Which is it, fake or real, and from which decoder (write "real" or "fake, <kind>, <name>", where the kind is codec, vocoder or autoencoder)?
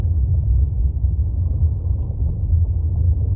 real